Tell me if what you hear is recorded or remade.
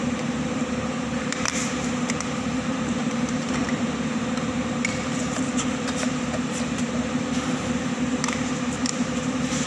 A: remade